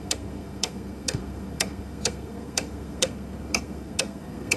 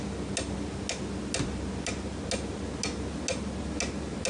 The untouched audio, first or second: second